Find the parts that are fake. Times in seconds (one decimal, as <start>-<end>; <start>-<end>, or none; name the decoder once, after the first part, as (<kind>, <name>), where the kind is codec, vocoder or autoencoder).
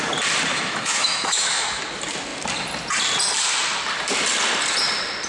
0.5-1.8 (autoencoder, DAC-VAE)